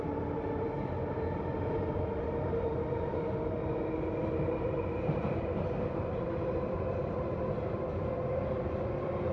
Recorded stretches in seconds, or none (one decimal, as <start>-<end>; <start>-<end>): 0.0-9.3